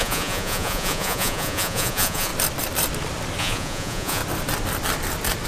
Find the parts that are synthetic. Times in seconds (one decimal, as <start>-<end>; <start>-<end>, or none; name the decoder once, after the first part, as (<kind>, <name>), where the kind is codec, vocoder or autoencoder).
0.0-2.3 (vocoder, Vocos); 3.4-4.2